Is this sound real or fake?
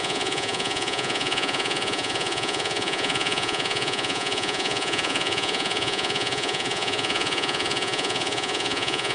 fake